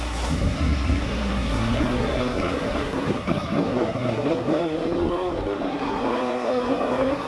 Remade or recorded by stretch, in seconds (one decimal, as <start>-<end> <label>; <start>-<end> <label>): 0.0-7.3 remade